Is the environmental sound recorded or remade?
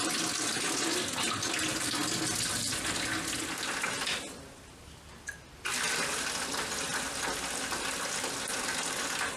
recorded